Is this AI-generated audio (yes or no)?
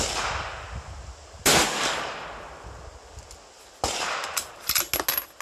no